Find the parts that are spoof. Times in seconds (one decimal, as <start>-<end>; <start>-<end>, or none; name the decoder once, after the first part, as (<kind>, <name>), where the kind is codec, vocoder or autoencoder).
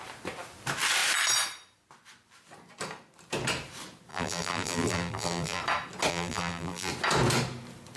4.1-5.6 (vocoder, BigVGAN v2); 6.1-6.9